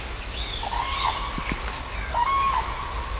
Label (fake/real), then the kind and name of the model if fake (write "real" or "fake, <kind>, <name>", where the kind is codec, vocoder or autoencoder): fake, codec, DAC